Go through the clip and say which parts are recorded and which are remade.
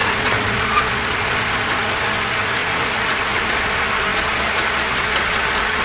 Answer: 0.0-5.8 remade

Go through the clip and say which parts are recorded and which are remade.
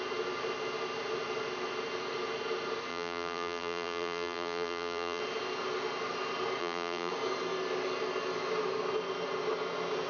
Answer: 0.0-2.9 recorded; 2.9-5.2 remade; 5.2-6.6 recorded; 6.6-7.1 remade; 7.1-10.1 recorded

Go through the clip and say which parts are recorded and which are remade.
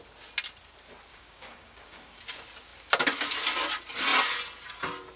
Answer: 0.0-1.1 recorded; 1.1-2.2 remade; 2.2-5.2 recorded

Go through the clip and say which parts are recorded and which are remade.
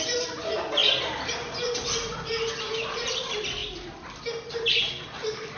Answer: 0.0-3.6 remade; 3.6-4.5 recorded; 4.5-5.6 remade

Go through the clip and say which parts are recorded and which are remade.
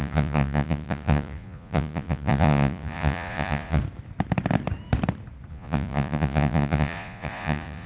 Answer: 0.0-3.8 remade; 3.8-5.5 recorded; 5.5-7.9 remade